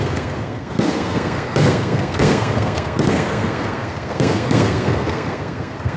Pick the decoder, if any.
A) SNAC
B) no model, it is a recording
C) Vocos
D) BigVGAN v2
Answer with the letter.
A